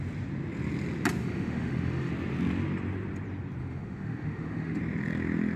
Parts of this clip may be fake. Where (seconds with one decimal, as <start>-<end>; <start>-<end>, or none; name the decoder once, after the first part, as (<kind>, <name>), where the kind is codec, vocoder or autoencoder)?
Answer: 1.2-2.1 (autoencoder, DAC-VAE); 3.6-4.8